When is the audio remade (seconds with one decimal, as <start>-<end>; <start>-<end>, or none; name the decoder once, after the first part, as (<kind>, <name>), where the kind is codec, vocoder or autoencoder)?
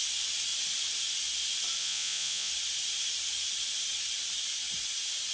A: 1.8-2.5 (vocoder, Vocos)